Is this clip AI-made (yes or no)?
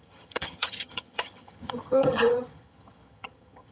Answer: yes